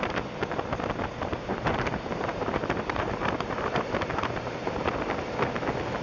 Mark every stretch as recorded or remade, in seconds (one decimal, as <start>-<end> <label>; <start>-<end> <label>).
0.0-1.5 recorded; 1.5-5.1 remade; 5.1-6.0 recorded